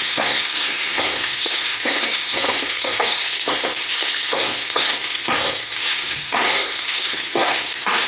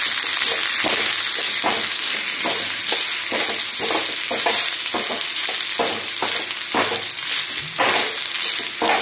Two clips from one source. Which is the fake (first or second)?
first